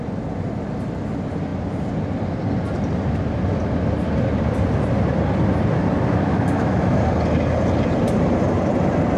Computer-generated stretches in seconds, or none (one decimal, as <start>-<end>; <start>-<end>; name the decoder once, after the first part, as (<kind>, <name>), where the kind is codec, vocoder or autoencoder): 6.3-7.0 (autoencoder, DAC-VAE)